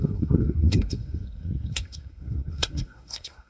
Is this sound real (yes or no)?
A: no